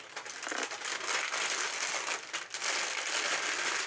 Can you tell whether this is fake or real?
real